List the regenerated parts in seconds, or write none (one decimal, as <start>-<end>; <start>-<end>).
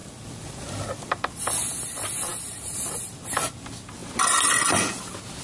0.0-1.4; 2.3-3.2; 4.0-4.8